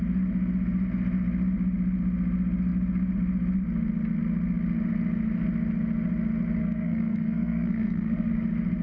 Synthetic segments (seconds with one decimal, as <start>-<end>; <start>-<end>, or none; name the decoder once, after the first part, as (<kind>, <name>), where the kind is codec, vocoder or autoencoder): 6.6-8.3 (codec, SNAC)